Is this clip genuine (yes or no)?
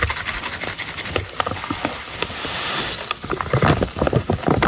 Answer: yes